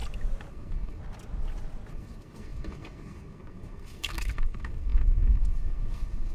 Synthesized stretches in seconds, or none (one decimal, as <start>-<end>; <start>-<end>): 0.5-1.0; 1.9-6.3